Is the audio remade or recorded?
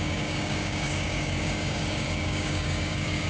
remade